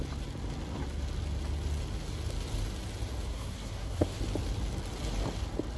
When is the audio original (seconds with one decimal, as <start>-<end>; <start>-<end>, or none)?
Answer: 0.0-3.3; 4.2-5.8